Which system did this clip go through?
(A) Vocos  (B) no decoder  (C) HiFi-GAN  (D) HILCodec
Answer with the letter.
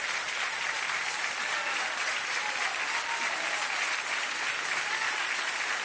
B